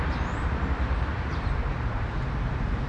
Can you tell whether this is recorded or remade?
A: remade